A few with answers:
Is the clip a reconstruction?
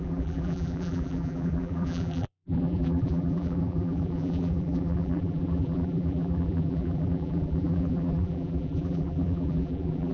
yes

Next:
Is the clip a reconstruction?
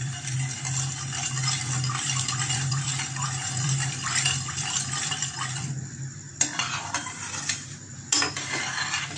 yes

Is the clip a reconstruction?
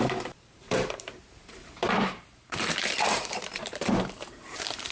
yes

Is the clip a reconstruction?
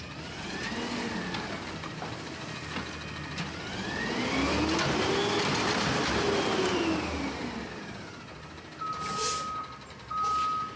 no